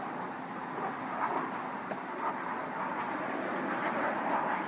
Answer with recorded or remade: recorded